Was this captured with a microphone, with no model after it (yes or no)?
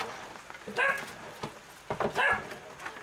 yes